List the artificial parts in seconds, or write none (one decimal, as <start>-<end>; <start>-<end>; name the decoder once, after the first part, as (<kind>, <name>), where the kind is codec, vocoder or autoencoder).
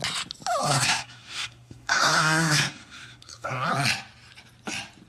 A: 0.6-3.7 (codec, SNAC)